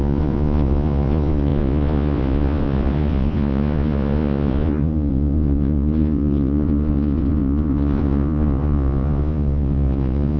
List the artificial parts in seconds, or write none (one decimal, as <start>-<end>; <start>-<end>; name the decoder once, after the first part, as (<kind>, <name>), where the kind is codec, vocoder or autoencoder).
0.0-10.4 (vocoder, Vocos)